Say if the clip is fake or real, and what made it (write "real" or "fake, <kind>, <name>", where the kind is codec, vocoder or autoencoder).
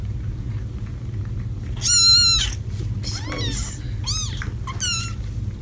real